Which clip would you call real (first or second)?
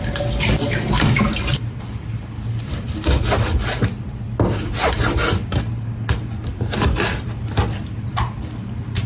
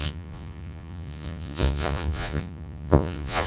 first